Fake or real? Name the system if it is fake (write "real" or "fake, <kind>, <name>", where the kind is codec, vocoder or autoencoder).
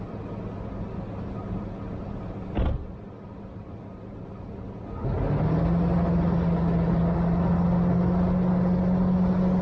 real